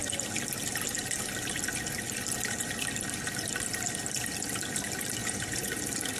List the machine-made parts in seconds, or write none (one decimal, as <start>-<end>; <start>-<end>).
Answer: 5.2-5.7